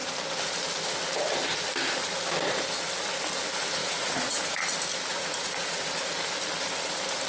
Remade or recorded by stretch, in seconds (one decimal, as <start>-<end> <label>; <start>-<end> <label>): 0.0-3.8 recorded; 3.8-4.4 remade; 4.4-5.1 recorded; 5.1-5.9 remade; 5.9-7.3 recorded